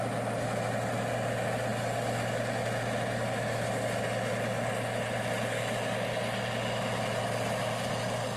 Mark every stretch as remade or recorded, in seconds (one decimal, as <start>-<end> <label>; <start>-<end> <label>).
0.0-8.4 recorded